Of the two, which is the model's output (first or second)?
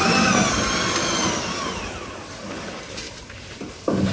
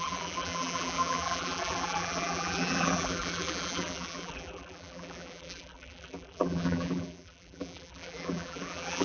second